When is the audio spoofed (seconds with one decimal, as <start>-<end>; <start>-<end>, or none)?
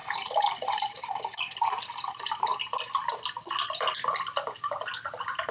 0.0-1.1